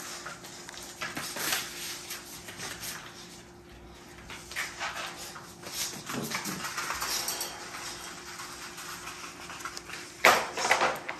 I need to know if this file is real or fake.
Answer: real